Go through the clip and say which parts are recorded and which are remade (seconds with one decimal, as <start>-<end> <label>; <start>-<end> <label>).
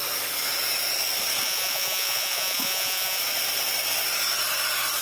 0.0-1.4 recorded; 1.4-3.2 remade; 3.2-5.0 recorded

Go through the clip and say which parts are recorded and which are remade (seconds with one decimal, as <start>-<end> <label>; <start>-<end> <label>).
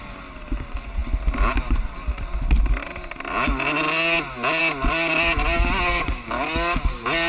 0.0-7.3 recorded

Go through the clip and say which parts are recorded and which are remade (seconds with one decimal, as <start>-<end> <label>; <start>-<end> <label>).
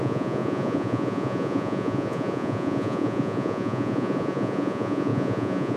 0.0-5.8 remade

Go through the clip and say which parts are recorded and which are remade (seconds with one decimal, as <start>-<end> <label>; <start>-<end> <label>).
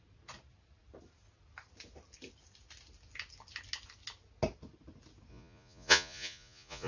0.0-5.3 recorded; 5.3-6.9 remade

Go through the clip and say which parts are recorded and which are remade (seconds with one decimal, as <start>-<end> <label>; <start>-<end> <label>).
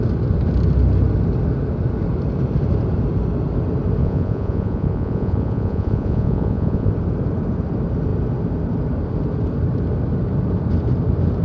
0.0-4.0 recorded; 4.0-6.9 remade; 6.9-11.4 recorded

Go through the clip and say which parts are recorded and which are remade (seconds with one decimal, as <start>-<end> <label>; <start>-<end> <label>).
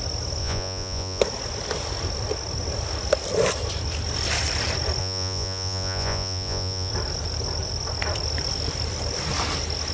0.0-0.4 recorded; 0.4-1.2 remade; 1.2-5.0 recorded; 5.0-6.9 remade; 6.9-9.9 recorded